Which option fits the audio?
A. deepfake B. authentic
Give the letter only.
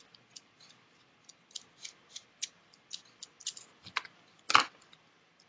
B